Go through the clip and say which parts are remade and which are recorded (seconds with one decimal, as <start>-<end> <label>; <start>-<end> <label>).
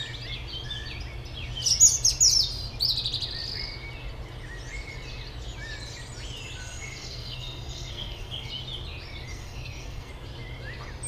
0.0-6.6 recorded; 6.6-8.5 remade; 8.5-9.3 recorded; 9.3-10.1 remade; 10.1-11.1 recorded